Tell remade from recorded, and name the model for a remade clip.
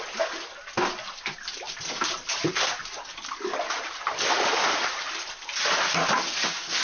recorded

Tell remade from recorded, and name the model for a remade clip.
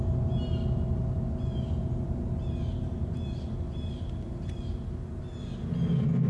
recorded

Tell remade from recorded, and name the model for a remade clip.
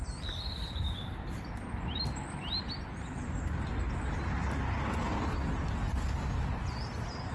recorded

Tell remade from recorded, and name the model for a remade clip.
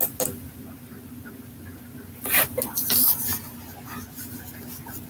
recorded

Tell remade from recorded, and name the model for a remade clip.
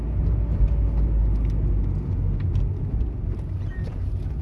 recorded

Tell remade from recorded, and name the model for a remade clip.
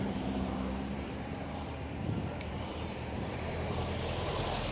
remade, vocoder, BigVGAN v2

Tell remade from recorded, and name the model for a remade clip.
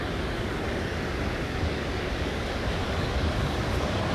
remade, codec, DAC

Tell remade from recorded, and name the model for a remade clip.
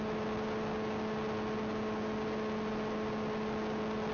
recorded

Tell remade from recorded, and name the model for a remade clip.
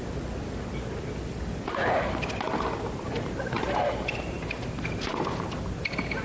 recorded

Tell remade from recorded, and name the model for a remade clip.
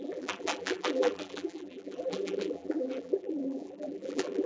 remade, vocoder, BigVGAN v2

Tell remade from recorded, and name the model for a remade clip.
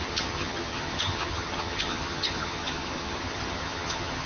remade, vocoder, HiFi-GAN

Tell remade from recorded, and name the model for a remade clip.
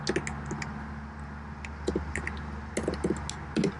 recorded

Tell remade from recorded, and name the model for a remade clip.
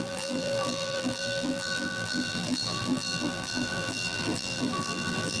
remade, vocoder, BigVGAN v2